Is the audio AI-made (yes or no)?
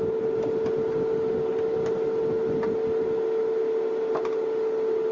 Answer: no